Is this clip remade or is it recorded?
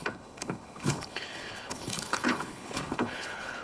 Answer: remade